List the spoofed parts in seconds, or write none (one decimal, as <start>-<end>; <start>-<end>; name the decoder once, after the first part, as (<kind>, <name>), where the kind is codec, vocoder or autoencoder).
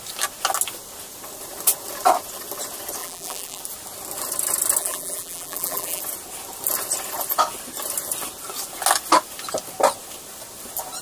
3.0-3.6 (vocoder, BigVGAN v2); 4.8-6.0